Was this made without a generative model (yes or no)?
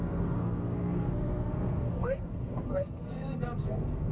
no